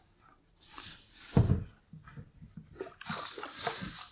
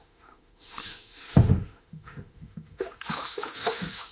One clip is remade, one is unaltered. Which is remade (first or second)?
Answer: second